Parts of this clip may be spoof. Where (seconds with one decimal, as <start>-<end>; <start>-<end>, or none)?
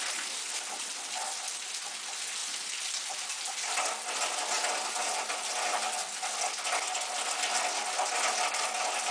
none